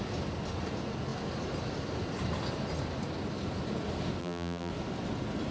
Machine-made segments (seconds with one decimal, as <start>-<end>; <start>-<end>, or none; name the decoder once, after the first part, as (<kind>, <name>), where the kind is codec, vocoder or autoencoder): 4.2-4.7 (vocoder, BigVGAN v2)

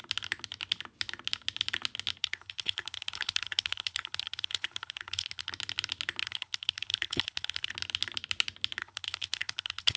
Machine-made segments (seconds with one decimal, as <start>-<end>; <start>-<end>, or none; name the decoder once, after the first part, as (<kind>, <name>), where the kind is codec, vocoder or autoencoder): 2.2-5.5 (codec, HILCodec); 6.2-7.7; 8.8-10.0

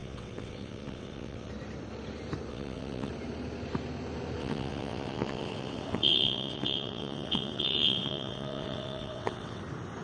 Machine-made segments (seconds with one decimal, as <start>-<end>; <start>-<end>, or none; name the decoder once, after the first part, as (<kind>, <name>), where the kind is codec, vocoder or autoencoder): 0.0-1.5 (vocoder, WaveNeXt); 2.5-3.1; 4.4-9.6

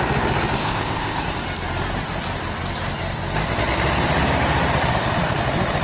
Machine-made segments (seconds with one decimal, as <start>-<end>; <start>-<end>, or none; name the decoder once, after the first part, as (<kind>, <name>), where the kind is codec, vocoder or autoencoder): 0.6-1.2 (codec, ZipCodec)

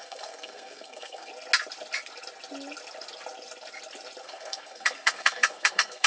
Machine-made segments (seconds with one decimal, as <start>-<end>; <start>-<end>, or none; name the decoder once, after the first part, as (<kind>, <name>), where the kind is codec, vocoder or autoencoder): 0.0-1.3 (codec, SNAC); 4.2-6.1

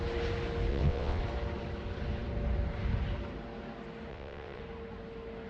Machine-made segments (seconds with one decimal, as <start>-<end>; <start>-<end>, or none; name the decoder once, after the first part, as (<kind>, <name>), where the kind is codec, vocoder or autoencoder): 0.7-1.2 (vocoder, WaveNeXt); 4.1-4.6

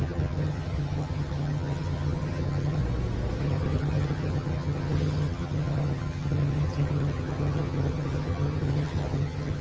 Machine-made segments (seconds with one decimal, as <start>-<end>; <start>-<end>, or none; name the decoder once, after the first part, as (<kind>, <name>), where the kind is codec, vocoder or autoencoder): 0.0-2.8 (vocoder, HiFi-GAN); 3.4-9.6